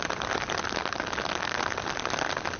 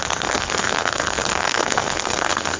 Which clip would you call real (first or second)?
first